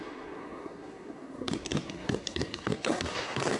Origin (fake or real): fake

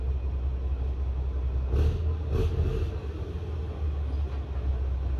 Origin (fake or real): real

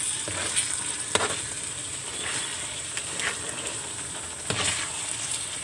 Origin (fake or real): real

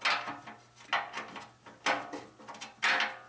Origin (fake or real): real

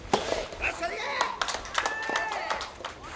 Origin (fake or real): real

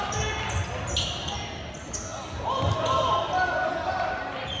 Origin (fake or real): real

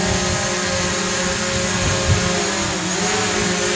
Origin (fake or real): real